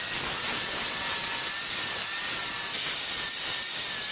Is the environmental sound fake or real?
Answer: real